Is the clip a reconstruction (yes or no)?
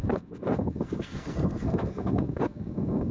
yes